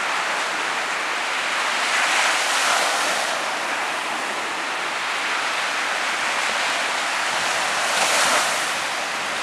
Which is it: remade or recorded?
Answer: recorded